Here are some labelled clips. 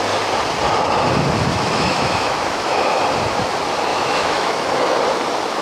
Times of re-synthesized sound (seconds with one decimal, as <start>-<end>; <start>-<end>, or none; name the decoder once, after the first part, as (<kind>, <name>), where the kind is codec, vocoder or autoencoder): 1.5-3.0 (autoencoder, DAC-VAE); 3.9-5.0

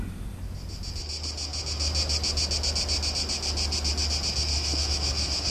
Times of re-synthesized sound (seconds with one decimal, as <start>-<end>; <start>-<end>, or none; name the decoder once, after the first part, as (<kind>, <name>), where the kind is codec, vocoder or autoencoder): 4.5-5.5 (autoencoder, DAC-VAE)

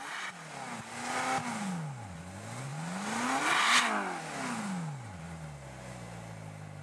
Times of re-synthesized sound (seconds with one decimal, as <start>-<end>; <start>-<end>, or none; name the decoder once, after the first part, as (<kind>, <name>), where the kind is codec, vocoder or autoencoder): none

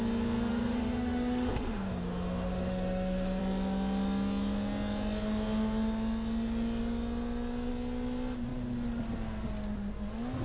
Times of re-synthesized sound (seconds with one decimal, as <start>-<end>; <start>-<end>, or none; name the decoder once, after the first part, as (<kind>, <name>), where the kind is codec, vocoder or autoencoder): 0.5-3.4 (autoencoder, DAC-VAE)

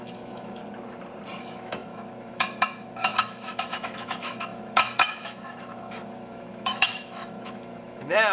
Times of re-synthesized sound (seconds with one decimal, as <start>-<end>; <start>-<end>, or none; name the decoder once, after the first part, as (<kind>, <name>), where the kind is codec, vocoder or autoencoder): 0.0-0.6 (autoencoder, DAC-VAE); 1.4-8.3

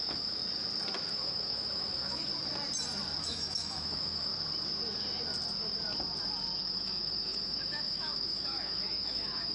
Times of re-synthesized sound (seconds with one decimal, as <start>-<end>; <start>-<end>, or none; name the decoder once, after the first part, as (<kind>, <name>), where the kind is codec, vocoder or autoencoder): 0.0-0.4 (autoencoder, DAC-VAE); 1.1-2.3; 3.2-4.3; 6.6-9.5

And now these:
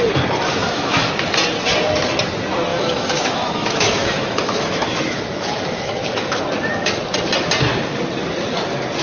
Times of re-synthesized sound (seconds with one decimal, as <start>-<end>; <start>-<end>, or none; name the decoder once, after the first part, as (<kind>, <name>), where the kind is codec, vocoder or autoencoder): 0.6-1.1 (autoencoder, DAC-VAE); 2.7-6.4